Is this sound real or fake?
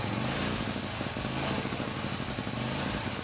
real